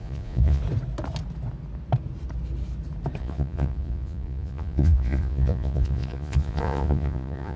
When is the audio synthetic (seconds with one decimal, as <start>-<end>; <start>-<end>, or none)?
0.0-0.6; 3.2-7.6